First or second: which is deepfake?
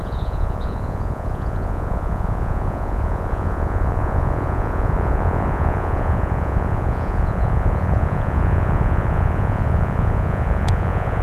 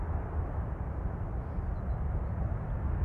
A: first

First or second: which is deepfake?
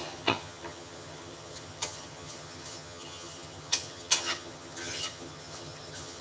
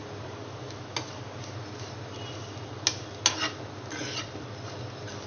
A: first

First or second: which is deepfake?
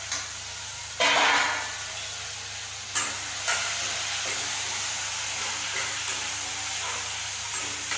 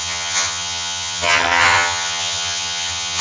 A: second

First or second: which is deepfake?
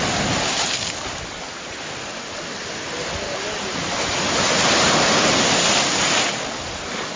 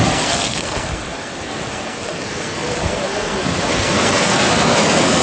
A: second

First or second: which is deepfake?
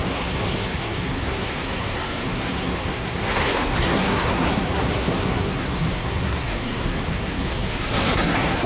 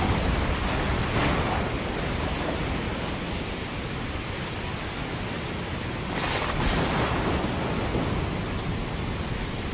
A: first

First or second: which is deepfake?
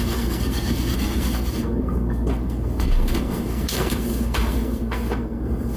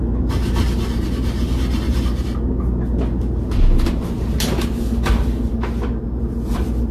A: first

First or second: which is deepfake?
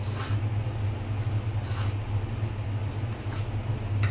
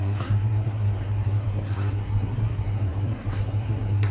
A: second